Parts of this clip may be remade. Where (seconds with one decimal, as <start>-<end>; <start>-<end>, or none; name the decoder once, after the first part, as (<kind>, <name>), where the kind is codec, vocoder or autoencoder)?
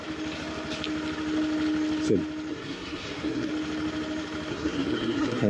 2.5-3.5 (codec, SNAC); 4.5-5.5